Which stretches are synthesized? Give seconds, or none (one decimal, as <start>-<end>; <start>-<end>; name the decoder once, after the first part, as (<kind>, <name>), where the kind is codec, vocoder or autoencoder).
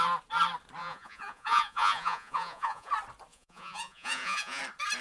0.8-2.9 (vocoder, Vocos); 3.3-4.6